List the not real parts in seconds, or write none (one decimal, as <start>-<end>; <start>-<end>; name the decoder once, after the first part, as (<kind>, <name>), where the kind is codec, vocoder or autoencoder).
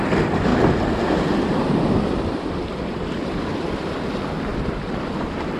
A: none